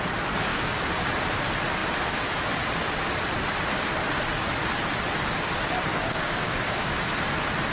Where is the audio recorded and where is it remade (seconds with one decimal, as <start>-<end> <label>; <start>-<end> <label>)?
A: 0.0-0.5 recorded; 0.5-1.1 remade; 1.1-5.9 recorded; 5.9-7.0 remade; 7.0-7.7 recorded